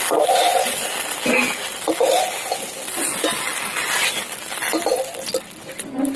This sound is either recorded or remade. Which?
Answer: recorded